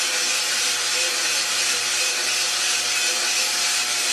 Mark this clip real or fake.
fake